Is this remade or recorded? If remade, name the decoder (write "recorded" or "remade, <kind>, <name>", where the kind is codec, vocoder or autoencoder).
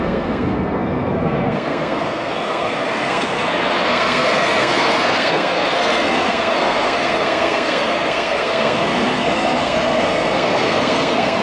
remade, codec, SNAC